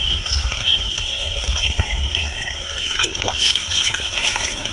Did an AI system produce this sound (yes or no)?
yes